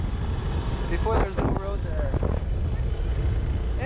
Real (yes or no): yes